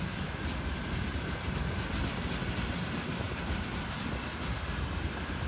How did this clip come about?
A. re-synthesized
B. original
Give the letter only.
B